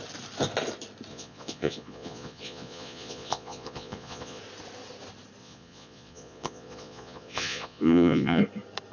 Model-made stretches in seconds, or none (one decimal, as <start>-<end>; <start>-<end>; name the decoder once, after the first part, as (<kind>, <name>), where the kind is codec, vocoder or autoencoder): 1.1-4.4 (vocoder, Vocos); 5.4-8.4